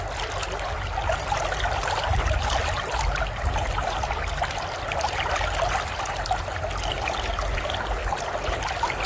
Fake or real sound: real